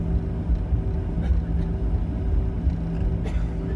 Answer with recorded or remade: recorded